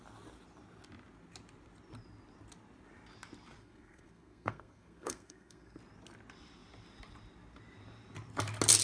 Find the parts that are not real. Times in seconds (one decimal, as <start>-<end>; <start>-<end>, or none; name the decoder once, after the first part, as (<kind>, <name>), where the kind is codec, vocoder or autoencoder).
3.6-5.8 (codec, SNAC)